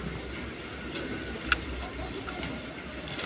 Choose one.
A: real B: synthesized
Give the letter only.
A